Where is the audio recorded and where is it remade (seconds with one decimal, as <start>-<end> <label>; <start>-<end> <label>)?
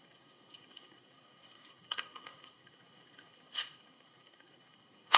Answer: 0.0-5.2 remade